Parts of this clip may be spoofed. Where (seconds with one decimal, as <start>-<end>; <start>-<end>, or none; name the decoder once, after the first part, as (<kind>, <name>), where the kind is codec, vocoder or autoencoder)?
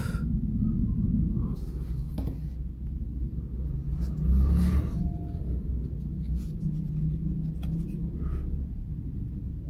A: none